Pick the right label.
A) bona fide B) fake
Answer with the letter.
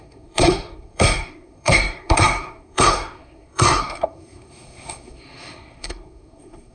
B